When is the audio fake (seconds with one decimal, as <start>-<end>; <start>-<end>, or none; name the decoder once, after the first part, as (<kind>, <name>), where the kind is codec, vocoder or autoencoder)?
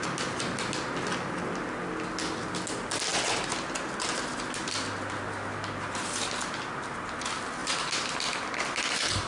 none